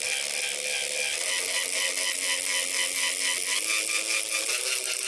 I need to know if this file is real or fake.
real